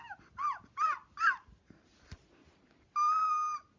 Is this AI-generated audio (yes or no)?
no